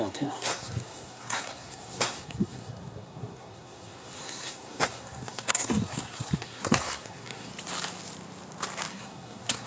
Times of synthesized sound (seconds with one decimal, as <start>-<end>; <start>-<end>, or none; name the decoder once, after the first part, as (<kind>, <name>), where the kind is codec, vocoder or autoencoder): 0.0-7.5 (codec, SNAC); 8.9-9.7